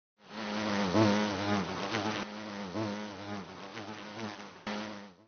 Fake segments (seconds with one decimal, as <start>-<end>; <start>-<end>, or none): none